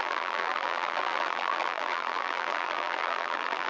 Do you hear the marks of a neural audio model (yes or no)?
yes